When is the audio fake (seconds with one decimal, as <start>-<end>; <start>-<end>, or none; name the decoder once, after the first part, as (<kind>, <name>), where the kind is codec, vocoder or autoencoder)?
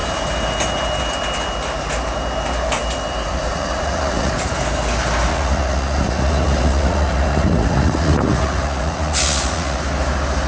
3.3-4.3 (vocoder, Vocos); 5.3-9.8